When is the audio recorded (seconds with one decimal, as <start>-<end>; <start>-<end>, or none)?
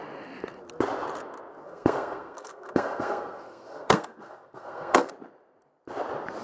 0.0-1.6; 5.1-6.4